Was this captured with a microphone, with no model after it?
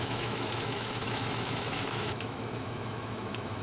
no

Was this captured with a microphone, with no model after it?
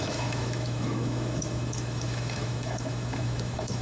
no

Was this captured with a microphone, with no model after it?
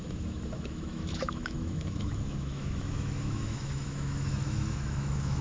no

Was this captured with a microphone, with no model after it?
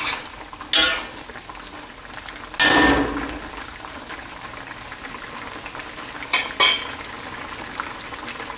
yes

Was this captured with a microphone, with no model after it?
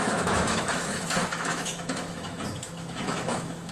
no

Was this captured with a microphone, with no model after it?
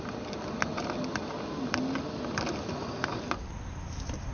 yes